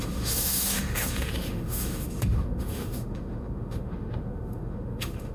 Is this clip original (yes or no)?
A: no